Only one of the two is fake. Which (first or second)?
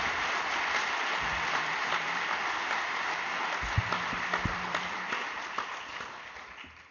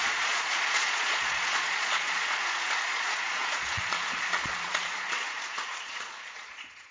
second